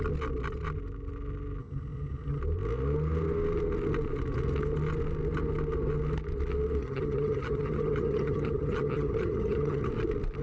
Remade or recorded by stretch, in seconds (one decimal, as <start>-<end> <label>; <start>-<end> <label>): 0.0-1.6 recorded; 1.6-2.4 remade; 2.4-6.8 recorded; 6.8-9.9 remade; 9.9-10.4 recorded